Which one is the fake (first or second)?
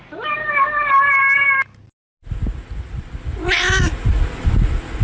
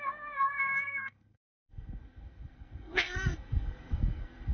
second